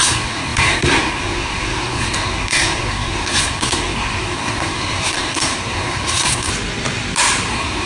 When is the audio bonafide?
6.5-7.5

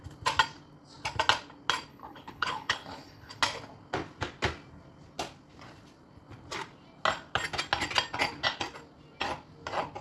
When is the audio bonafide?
0.0-1.9; 3.4-10.0

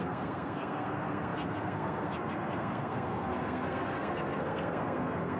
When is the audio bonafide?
none